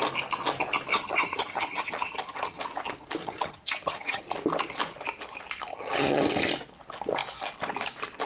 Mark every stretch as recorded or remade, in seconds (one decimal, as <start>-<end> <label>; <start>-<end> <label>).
0.0-0.9 recorded; 0.9-2.6 remade; 2.6-3.2 recorded; 3.2-4.2 remade; 4.2-5.7 recorded; 5.7-6.2 remade; 6.2-8.3 recorded